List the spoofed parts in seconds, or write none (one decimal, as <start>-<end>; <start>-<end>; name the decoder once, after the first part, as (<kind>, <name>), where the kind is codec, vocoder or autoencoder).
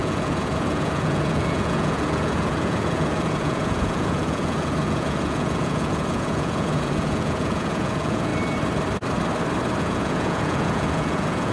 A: 0.0-8.3 (vocoder, Vocos); 9.8-11.5